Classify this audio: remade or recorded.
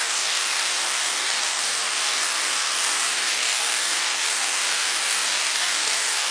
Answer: remade